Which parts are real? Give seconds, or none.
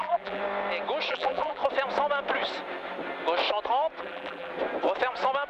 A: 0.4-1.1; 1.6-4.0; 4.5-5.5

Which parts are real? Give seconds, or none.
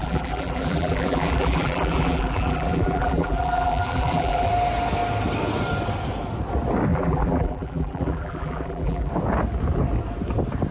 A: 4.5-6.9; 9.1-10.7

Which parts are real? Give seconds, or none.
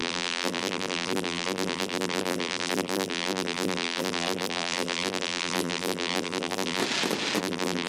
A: 6.8-7.4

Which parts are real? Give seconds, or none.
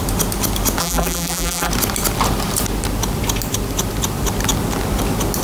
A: 0.0-0.8; 1.7-5.4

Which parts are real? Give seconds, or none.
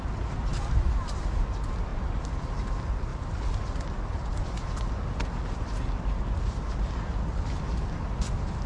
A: 0.0-0.5; 1.4-8.7